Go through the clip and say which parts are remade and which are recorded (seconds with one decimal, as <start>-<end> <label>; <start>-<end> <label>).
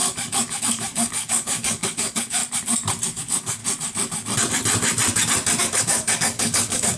0.0-2.4 remade; 2.4-3.2 recorded; 3.2-3.6 remade; 3.6-5.6 recorded; 5.6-7.0 remade